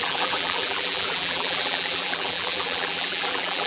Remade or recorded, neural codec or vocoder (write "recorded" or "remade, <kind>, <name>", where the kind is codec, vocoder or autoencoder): remade, vocoder, BigVGAN v2